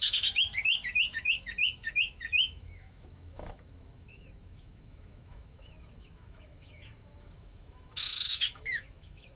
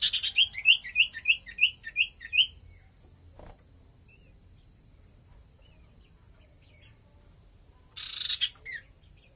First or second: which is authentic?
second